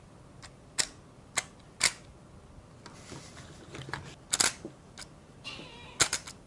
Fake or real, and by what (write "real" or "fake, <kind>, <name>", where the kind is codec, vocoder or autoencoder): real